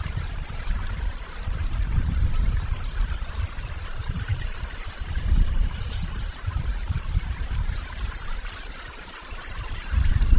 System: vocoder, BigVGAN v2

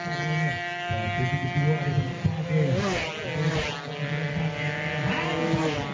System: none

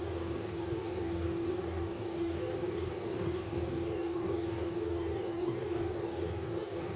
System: codec, DAC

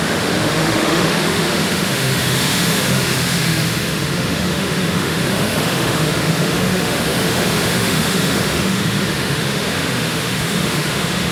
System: autoencoder, DAC-VAE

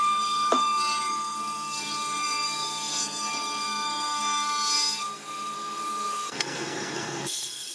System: codec, SNAC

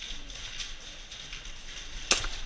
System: none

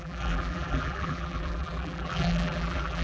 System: vocoder, BigVGAN v2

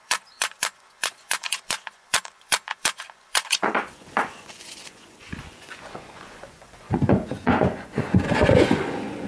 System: vocoder, Vocos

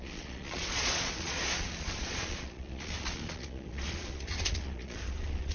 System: vocoder, Vocos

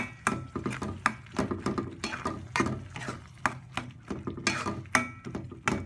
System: none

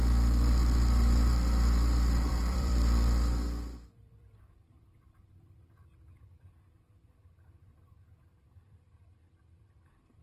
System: vocoder, BigVGAN v2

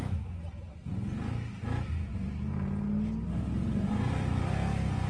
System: none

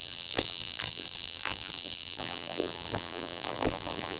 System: vocoder, BigVGAN v2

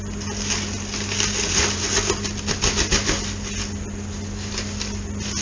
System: none